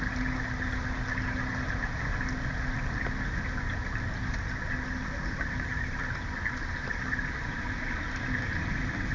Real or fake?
real